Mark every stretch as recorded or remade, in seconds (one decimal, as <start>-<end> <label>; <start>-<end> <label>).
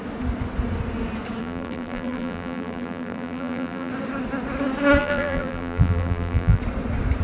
0.0-1.4 recorded; 1.4-3.9 remade; 3.9-5.0 recorded; 5.0-6.6 remade; 6.6-7.2 recorded